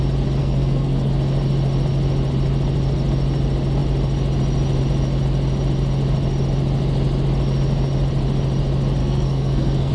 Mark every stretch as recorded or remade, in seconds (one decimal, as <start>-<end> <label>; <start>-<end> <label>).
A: 0.0-0.4 recorded; 0.4-1.1 remade; 1.1-9.0 recorded; 9.0-9.9 remade